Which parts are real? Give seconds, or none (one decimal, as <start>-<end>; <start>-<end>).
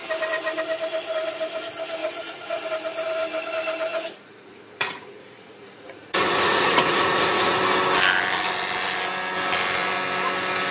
0.0-2.0; 2.6-3.9; 7.6-10.7